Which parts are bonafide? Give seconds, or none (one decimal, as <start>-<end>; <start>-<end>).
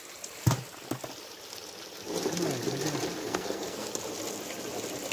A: 0.0-3.2; 3.9-5.1